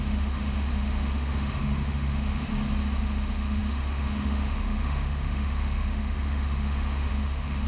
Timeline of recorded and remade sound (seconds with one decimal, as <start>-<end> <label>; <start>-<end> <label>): 0.0-2.5 remade; 2.5-3.0 recorded; 3.0-7.7 remade